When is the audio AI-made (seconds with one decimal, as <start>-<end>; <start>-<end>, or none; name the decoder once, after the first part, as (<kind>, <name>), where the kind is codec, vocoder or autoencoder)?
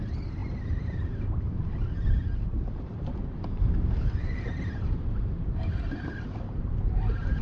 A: 0.4-3.2 (vocoder, BigVGAN v2); 4.2-7.4